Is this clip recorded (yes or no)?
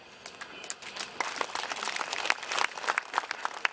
yes